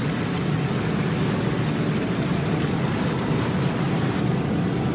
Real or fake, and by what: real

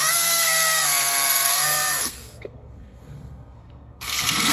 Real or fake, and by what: fake, codec, SNAC